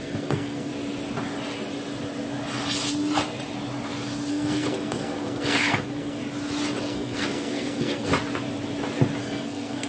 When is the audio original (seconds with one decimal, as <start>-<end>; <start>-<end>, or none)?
0.7-4.3; 6.2-6.8; 8.1-9.2